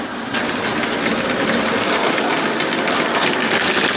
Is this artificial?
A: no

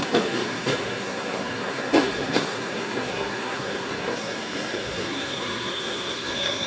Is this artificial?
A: yes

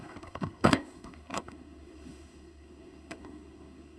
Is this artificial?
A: yes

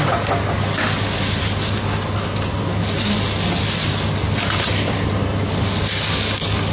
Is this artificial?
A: no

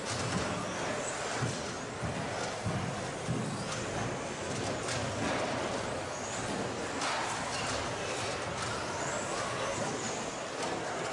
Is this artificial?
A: no